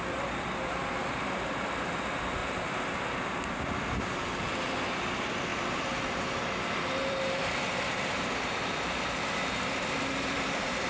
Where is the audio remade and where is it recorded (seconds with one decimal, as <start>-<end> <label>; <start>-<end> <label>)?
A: 0.0-2.4 remade; 2.4-3.3 recorded; 3.3-10.9 remade